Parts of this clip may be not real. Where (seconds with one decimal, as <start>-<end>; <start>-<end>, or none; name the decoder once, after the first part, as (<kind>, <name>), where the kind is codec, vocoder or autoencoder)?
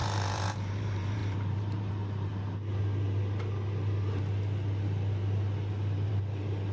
0.0-2.3 (vocoder, BigVGAN v2); 6.1-6.7